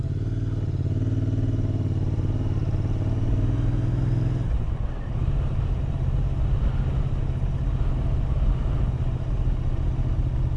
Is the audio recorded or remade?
recorded